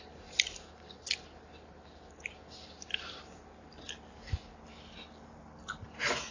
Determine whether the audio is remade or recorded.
recorded